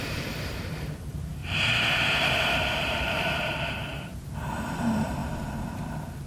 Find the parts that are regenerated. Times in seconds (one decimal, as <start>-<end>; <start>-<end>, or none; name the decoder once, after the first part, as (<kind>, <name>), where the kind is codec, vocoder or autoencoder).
0.0-4.1 (vocoder, BigVGAN v2); 4.7-6.3